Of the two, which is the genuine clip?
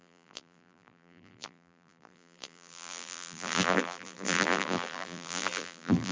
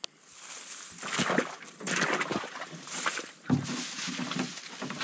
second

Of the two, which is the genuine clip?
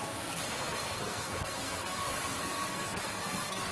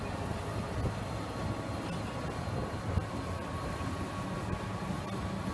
second